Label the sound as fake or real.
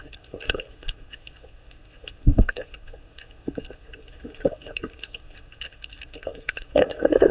fake